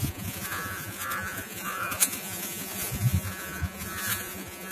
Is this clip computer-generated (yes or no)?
yes